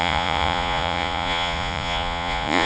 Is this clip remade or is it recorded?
remade